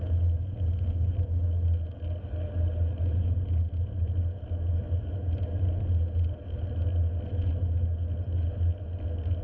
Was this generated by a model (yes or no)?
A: no